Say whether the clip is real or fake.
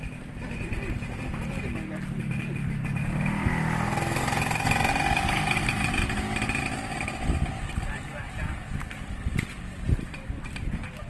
real